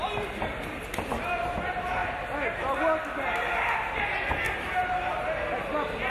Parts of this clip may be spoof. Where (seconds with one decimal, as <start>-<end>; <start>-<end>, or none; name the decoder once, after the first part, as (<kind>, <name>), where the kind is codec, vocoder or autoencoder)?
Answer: none